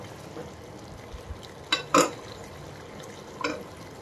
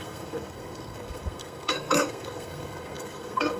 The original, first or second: first